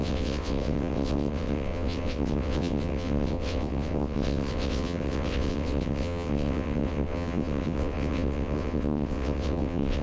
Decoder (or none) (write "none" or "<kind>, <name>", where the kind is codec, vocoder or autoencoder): vocoder, WaveNeXt